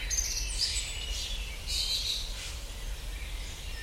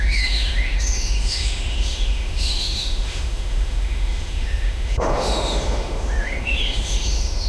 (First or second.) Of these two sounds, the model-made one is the second